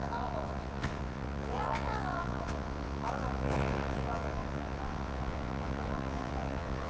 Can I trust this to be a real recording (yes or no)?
no